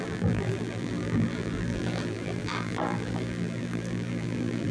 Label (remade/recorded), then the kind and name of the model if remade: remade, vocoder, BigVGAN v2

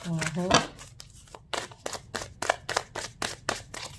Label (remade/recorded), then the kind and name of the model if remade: recorded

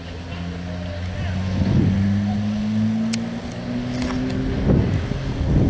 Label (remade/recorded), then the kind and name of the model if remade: recorded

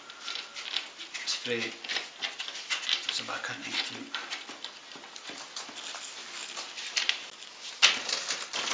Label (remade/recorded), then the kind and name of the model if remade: recorded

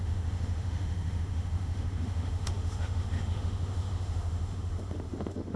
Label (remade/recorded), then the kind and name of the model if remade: remade, autoencoder, DAC-VAE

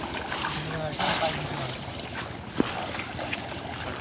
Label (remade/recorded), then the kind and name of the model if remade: recorded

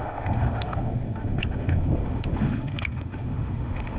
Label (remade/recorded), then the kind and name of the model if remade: remade, autoencoder, DAC-VAE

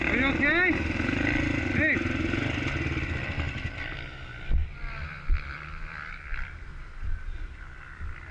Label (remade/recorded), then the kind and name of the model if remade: recorded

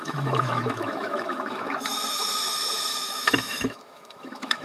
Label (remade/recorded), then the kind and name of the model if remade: remade, autoencoder, DAC-VAE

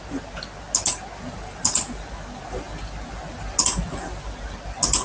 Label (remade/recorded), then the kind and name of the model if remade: recorded